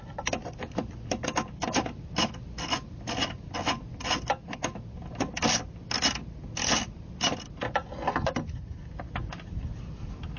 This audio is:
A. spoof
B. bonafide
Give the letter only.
B